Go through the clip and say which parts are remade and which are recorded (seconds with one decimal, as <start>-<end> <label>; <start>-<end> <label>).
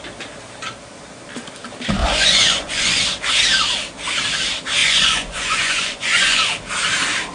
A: 0.0-2.0 recorded; 2.0-3.0 remade; 3.0-4.8 recorded; 4.8-6.4 remade; 6.4-7.3 recorded